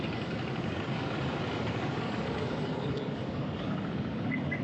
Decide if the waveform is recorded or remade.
remade